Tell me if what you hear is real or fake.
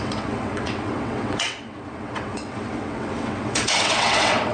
fake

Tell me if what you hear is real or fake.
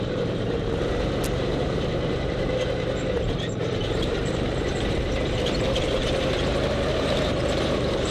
fake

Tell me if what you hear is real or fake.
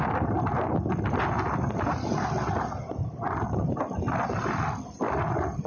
real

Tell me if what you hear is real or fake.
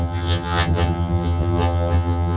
fake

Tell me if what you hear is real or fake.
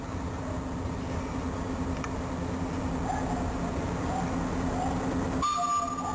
real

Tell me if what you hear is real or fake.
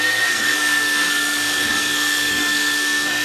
fake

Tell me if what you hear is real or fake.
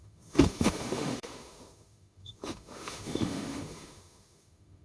fake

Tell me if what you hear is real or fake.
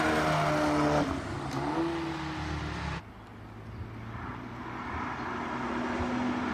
real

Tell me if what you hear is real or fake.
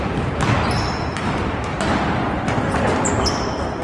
real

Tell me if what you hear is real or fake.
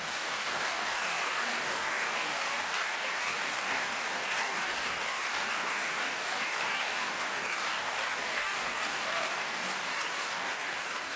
fake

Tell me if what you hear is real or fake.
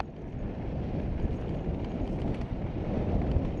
real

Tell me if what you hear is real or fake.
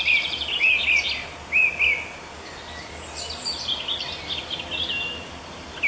real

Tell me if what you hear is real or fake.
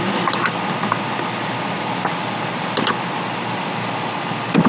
real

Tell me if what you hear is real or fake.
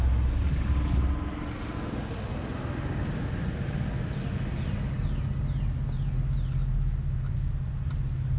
real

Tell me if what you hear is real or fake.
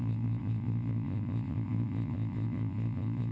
fake